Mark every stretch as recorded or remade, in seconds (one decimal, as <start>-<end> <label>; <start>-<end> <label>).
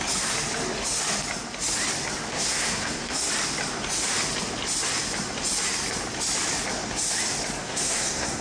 0.0-2.3 recorded; 2.3-3.3 remade; 3.3-7.6 recorded; 7.6-8.4 remade